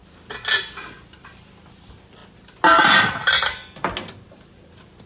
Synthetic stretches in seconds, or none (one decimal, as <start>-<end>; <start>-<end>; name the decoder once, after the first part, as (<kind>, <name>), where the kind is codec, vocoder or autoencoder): 0.6-2.2 (vocoder, BigVGAN v2); 3.0-3.6